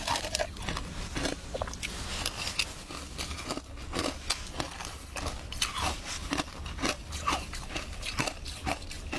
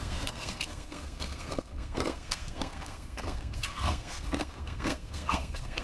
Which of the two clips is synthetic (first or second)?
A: second